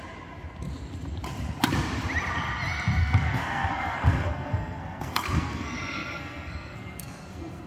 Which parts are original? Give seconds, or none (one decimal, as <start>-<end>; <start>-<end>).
0.0-3.0